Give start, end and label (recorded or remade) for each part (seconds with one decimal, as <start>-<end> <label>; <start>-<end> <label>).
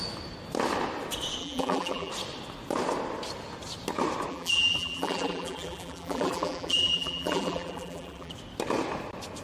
0.0-1.4 recorded; 1.4-2.1 remade; 2.1-4.3 recorded; 4.3-8.3 remade; 8.3-9.4 recorded